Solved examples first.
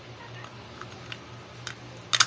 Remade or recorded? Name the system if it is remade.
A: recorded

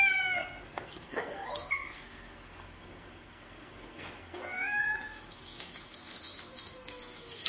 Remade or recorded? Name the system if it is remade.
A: remade, codec, SNAC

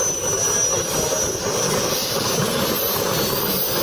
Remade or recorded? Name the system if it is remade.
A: recorded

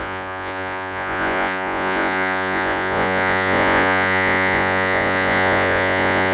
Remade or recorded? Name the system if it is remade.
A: remade, vocoder, Vocos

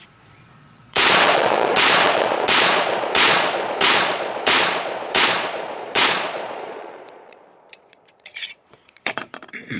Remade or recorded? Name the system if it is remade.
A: remade, vocoder, Vocos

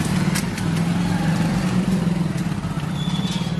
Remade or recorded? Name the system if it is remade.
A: recorded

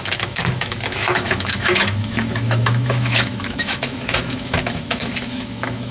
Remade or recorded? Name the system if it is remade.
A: remade, autoencoder, DAC-VAE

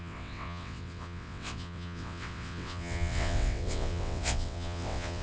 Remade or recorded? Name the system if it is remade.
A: remade, vocoder, WaveNeXt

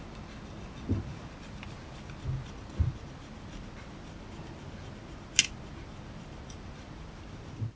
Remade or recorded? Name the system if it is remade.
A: recorded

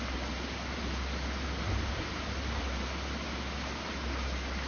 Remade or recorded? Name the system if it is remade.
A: recorded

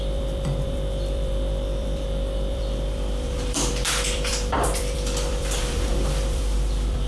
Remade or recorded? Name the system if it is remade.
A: remade, vocoder, BigVGAN v2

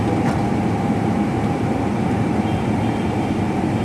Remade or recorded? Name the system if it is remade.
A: remade, vocoder, BigVGAN v2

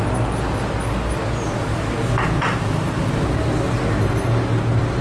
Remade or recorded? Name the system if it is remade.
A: recorded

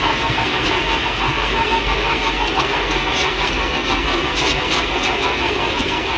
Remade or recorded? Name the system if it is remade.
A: remade, codec, SNAC